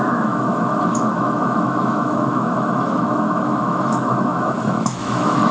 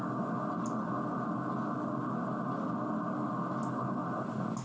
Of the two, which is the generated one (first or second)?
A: first